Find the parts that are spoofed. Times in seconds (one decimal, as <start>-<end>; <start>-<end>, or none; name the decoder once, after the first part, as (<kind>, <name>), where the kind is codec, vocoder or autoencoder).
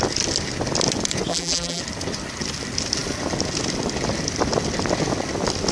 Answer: 1.3-1.8 (vocoder, BigVGAN v2)